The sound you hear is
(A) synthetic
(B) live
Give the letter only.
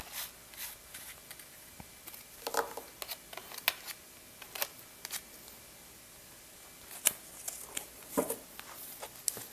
B